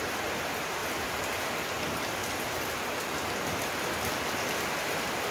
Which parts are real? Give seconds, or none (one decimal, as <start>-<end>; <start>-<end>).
2.2-3.6